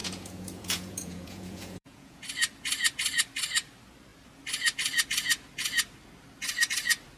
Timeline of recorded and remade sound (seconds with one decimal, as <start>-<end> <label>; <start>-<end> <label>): 0.0-2.2 remade; 2.2-7.2 recorded